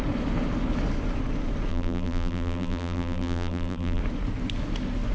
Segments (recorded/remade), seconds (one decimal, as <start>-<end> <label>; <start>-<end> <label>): 0.0-1.7 recorded; 1.7-4.0 remade; 4.0-5.1 recorded